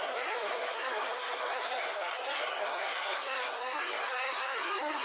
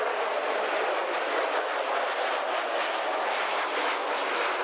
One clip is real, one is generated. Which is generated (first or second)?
first